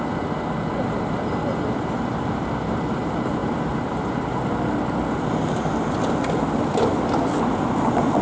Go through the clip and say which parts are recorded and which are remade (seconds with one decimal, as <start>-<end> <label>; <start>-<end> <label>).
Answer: 0.0-8.2 recorded